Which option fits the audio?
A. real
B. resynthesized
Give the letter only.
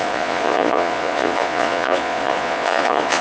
B